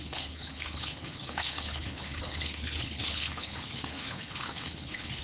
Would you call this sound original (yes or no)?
no